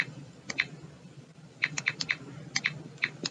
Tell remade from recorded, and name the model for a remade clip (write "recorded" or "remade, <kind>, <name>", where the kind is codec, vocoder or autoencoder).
remade, vocoder, BigVGAN v2